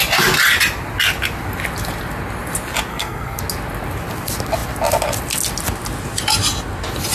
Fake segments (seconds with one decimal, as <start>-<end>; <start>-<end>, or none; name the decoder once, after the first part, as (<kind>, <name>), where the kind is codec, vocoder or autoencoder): 2.9-3.4 (codec, SNAC)